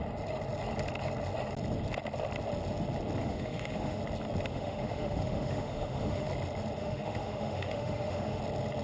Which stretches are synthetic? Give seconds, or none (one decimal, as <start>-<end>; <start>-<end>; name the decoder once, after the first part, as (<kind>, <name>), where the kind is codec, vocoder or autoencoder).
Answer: 3.2-4.0 (autoencoder, DAC-VAE); 4.5-6.3; 6.8-8.4